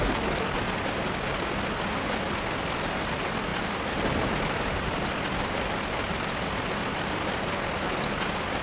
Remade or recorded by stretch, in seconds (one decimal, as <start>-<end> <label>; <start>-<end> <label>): 0.0-8.6 recorded